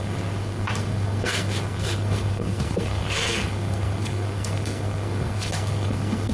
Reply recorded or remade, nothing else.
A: remade